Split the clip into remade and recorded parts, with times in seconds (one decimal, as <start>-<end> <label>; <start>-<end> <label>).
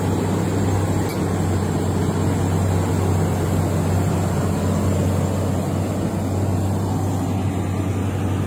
0.0-8.5 recorded